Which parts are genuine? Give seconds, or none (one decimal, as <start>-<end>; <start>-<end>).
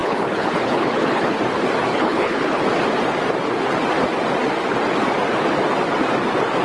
1.4-1.9; 2.6-6.6